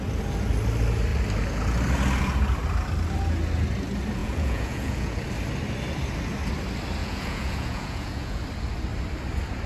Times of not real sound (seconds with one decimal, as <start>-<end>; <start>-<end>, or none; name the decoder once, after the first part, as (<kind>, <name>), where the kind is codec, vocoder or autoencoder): 4.2-5.2 (vocoder, Vocos); 7.0-8.4